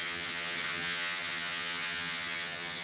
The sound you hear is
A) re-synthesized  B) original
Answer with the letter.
A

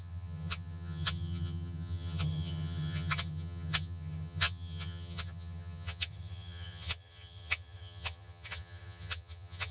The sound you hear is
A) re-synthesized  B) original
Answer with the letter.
A